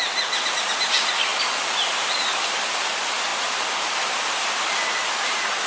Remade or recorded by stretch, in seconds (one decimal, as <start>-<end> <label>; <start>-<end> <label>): 0.0-5.7 recorded